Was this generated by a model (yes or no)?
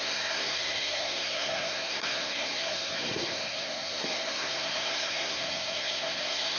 yes